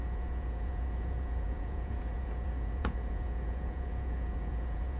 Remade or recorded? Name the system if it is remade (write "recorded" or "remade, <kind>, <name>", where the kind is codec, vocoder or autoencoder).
remade, vocoder, Vocos